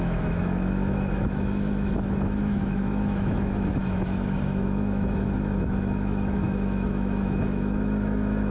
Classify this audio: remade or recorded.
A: remade